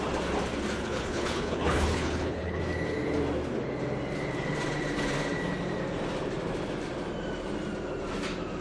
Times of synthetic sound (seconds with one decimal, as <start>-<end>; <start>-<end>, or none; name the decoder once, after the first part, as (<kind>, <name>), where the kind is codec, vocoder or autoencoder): 0.8-2.6 (codec, HILCodec)